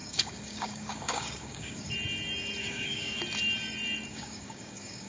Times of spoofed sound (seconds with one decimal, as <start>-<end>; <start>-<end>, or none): 0.0-1.9; 2.6-3.2; 4.1-5.1